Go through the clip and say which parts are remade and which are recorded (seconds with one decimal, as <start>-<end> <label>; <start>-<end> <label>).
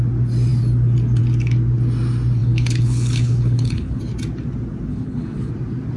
0.0-2.4 recorded; 2.4-4.0 remade; 4.0-4.9 recorded; 4.9-5.5 remade; 5.5-6.0 recorded